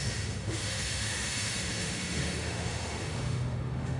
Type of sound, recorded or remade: remade